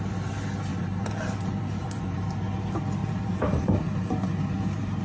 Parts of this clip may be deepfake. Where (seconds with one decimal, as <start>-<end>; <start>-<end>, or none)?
0.7-2.2; 3.0-4.1